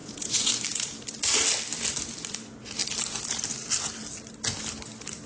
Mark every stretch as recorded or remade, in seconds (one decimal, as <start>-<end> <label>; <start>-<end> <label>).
0.0-0.5 remade; 0.5-5.3 recorded

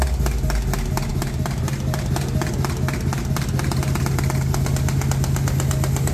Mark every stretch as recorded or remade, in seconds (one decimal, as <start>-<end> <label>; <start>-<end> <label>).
0.0-6.1 recorded